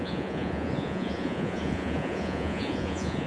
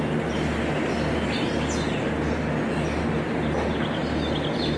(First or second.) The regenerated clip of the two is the first